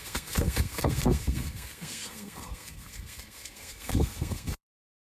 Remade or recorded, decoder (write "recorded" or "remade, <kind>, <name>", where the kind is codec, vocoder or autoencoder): remade, codec, SNAC